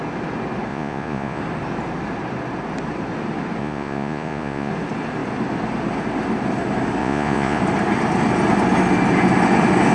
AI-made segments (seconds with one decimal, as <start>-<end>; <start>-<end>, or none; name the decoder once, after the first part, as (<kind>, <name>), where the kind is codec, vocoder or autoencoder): 0.7-1.4 (vocoder, Vocos); 3.6-4.7; 7.0-7.6